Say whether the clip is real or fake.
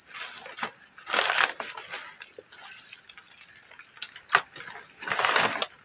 real